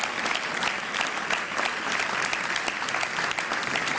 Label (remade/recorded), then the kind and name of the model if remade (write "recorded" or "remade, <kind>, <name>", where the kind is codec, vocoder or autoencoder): recorded